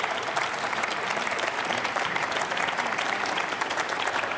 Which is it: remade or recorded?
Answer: remade